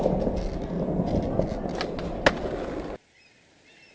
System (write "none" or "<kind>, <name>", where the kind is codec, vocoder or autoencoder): none